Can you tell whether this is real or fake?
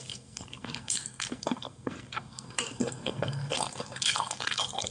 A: fake